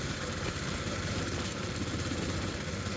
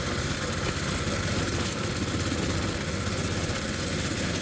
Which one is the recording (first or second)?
second